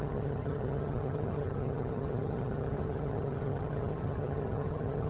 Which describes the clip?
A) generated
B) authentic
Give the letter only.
A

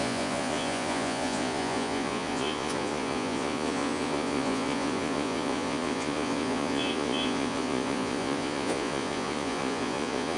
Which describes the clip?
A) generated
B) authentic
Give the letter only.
A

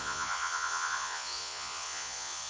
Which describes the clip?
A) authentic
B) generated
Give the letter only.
B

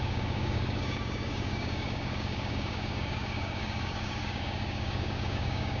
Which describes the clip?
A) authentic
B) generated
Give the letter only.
B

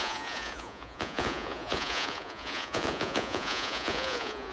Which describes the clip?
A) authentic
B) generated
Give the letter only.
B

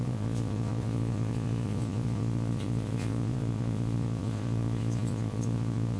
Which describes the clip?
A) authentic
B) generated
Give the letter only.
B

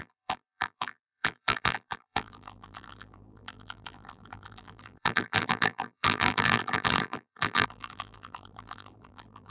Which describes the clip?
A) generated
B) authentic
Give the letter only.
A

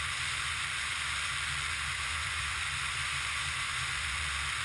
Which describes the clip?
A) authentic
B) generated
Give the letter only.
B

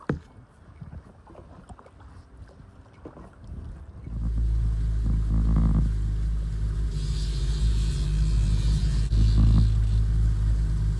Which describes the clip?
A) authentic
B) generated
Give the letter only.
A